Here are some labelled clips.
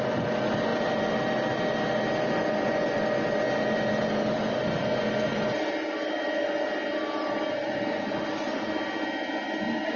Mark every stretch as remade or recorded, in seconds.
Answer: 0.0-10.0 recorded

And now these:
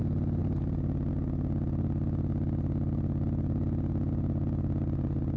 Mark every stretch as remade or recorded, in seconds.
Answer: 0.0-5.4 recorded

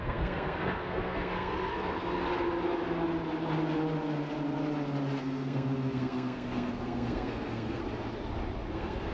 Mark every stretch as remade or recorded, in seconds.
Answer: 0.0-2.2 remade; 2.2-5.2 recorded; 5.2-7.8 remade; 7.8-8.7 recorded; 8.7-9.1 remade

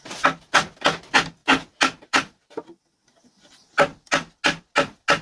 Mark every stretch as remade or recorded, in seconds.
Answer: 0.0-5.2 recorded

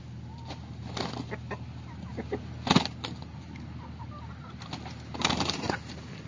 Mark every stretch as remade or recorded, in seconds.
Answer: 0.0-6.3 recorded

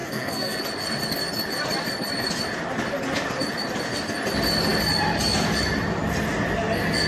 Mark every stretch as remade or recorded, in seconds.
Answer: 0.0-0.6 remade; 0.6-7.1 recorded

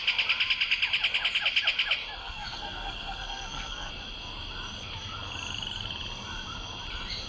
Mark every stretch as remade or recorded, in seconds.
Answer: 0.0-2.2 recorded; 2.2-3.9 remade; 3.9-7.3 recorded